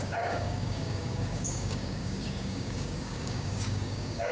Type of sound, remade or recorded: remade